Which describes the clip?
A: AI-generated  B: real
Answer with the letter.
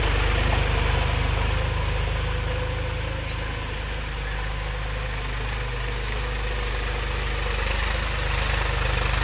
B